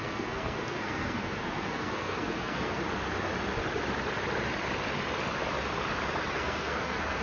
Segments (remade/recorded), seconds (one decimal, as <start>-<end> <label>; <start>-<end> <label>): 0.0-2.8 remade; 2.8-6.3 recorded; 6.3-7.2 remade